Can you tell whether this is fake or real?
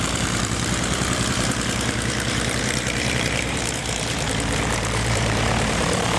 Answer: fake